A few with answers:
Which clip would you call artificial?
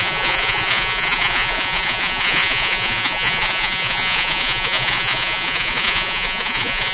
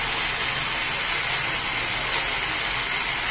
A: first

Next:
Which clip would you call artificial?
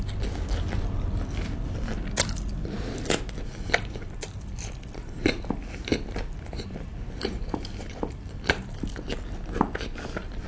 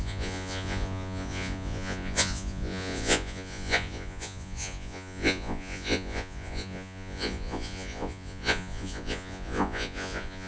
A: second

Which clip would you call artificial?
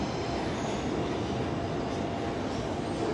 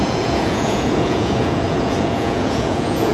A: second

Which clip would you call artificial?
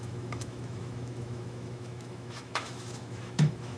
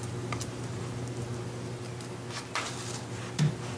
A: first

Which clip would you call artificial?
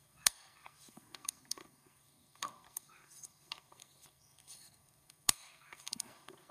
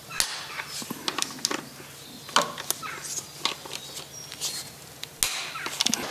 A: first